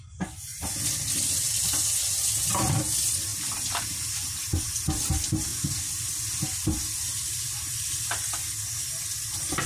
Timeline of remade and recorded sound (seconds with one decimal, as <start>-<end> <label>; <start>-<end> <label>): 0.0-0.5 recorded; 0.5-2.9 remade; 2.9-3.3 recorded; 3.3-3.8 remade; 3.8-5.5 recorded; 5.5-7.8 remade; 7.8-9.7 recorded